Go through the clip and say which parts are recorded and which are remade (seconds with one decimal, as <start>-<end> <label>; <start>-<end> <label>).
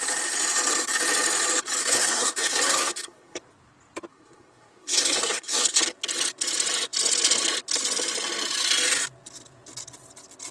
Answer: 0.0-1.8 recorded; 1.8-3.4 remade; 3.4-4.1 recorded; 4.1-5.8 remade; 5.8-10.5 recorded